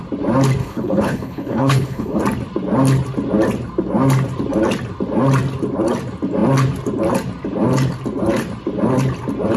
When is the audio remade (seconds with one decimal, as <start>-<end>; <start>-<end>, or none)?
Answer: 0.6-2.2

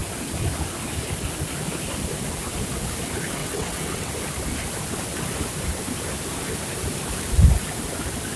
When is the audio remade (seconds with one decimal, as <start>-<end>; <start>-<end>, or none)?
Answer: 3.4-4.1

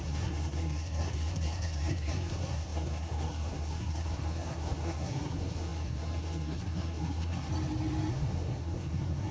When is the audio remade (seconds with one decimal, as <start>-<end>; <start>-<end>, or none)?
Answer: 0.0-7.5; 8.1-9.3

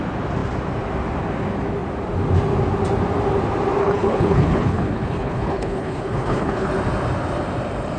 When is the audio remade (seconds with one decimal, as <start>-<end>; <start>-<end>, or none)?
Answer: 3.8-6.7